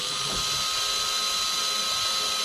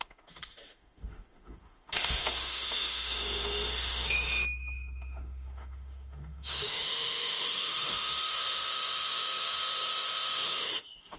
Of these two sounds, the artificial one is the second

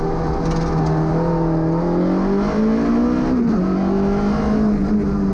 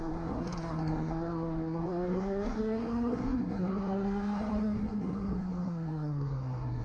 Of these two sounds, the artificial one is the second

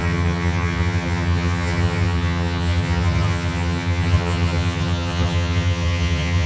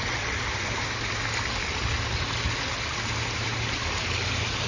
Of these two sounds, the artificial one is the first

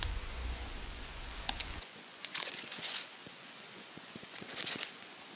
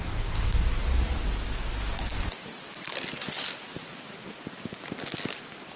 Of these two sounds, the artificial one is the first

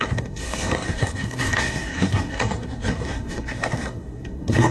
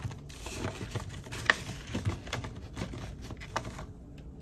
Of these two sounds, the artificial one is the first